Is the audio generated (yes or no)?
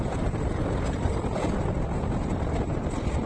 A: no